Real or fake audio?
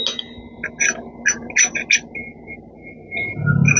real